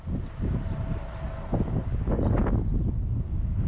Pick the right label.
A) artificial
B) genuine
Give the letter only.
B